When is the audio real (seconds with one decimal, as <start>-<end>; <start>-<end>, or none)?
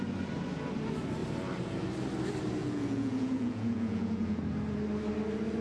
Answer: 0.0-2.6; 4.4-5.6